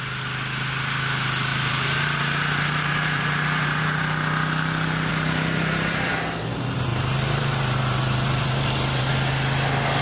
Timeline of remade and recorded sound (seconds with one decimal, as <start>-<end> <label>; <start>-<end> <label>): 0.0-1.5 recorded; 1.5-4.0 remade; 4.0-5.1 recorded; 5.1-6.1 remade; 6.1-6.9 recorded; 6.9-9.1 remade; 9.1-10.0 recorded